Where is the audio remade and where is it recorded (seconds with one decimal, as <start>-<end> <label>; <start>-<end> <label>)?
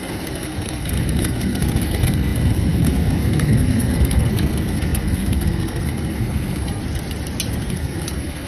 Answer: 0.0-6.8 remade; 6.8-7.5 recorded; 7.5-8.5 remade